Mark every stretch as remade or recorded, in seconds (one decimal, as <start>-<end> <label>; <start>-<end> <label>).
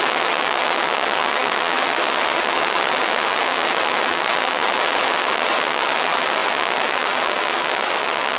0.0-8.4 remade